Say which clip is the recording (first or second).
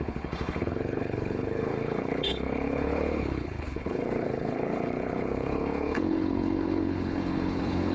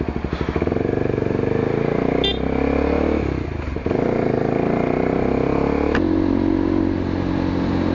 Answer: second